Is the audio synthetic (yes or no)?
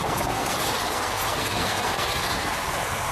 yes